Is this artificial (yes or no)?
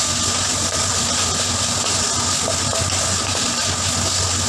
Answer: no